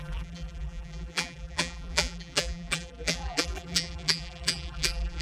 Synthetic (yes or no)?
yes